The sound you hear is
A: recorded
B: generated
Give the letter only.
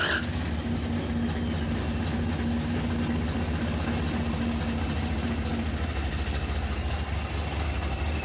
A